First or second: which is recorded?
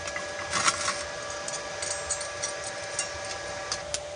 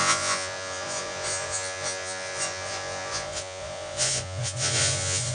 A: first